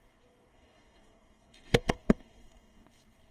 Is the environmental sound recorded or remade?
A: remade